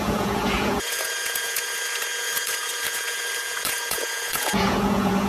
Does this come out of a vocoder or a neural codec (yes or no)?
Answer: yes